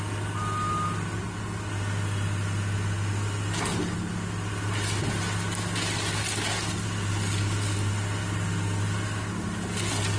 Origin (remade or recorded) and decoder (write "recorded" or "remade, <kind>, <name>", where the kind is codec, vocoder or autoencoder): recorded